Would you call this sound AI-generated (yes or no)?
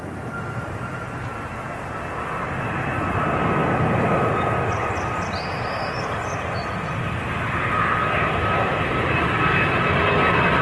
no